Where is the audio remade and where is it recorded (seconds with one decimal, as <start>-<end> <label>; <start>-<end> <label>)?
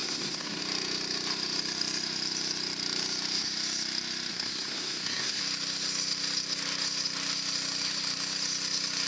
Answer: 0.0-0.6 remade; 0.6-4.3 recorded; 4.3-5.4 remade; 5.4-9.1 recorded